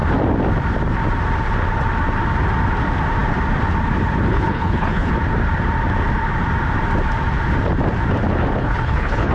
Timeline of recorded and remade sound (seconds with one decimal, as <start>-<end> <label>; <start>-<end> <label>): 0.0-4.3 recorded; 4.3-5.1 remade; 5.1-8.6 recorded; 8.6-9.3 remade